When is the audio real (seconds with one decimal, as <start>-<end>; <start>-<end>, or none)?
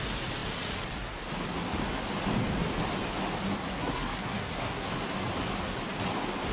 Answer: 0.0-3.6; 4.9-6.5